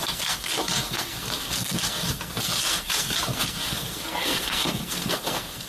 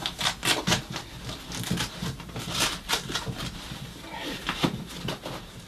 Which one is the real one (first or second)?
second